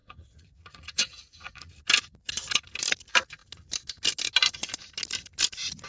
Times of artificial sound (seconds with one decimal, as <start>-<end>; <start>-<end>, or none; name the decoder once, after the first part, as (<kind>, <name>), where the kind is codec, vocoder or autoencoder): 0.0-1.7 (vocoder, Vocos)